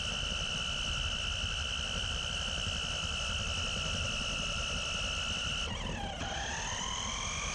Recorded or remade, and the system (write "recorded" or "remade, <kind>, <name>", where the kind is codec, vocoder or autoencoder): recorded